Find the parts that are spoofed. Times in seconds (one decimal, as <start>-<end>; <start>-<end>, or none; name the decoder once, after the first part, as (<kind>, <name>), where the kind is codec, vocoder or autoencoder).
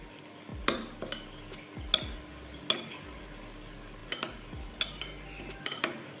none